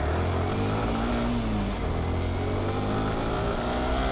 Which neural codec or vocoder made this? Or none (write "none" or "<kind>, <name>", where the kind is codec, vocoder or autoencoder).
none